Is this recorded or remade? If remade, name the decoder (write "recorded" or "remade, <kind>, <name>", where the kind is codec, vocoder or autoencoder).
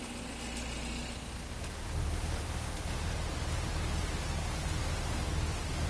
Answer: recorded